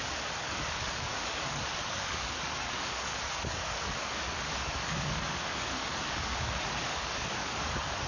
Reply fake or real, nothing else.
fake